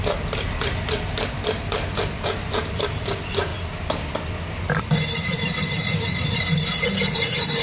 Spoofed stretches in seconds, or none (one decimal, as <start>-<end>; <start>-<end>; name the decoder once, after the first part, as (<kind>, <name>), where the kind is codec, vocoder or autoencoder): none

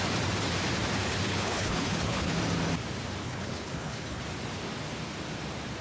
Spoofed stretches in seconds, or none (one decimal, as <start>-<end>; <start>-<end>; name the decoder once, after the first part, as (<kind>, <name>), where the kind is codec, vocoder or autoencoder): 1.3-2.4 (codec, HILCodec); 3.2-4.2

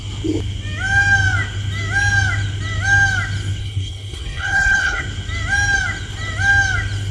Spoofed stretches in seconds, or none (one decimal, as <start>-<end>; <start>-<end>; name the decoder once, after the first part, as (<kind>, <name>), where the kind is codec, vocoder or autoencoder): 3.6-5.0 (codec, HILCodec)

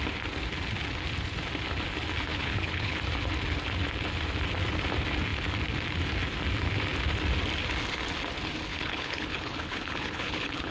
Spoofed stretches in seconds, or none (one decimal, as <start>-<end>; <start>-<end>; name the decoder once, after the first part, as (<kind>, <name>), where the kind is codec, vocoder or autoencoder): 2.3-3.0 (codec, HILCodec); 8.7-10.7

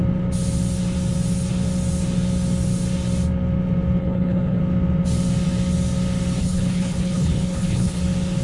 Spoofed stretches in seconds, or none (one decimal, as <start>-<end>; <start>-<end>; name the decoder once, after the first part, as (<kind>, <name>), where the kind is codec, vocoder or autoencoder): 4.0-4.6 (codec, HILCodec); 6.4-8.0

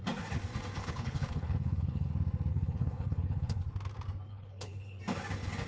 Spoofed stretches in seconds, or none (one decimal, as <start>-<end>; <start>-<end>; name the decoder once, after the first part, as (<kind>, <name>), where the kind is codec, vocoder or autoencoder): 0.8-2.1 (codec, HILCodec); 2.5-3.6; 4.3-5.0

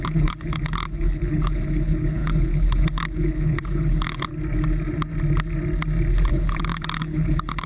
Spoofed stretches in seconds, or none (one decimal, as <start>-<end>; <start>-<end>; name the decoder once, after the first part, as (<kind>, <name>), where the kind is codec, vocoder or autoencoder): 0.0-4.3 (codec, HILCodec); 6.3-7.7